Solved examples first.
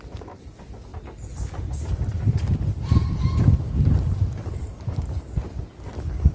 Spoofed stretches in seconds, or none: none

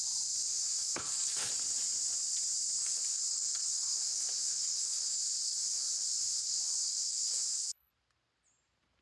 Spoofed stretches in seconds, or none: 0.5-1.5 (codec, HILCodec); 2.8-7.9

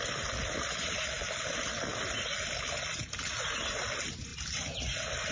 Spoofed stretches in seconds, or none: none

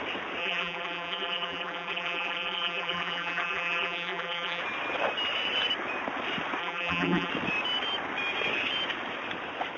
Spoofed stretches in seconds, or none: 0.4-4.6 (vocoder, BigVGAN v2); 6.6-7.3